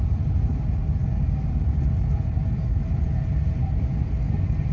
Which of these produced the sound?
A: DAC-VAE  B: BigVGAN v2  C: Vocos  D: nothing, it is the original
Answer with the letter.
D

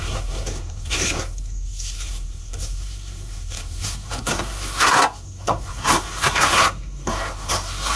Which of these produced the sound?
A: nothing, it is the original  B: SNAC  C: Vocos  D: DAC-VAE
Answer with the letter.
B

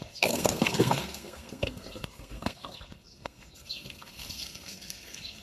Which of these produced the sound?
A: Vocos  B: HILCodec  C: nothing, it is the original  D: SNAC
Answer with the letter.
D